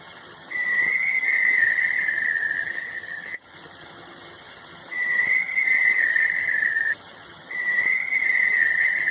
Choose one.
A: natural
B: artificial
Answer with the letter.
B